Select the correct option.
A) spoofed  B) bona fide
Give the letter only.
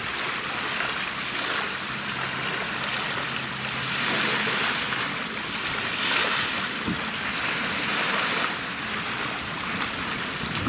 B